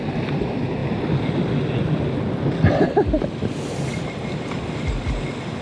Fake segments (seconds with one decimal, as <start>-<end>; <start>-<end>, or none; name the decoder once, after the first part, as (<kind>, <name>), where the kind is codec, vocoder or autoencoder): none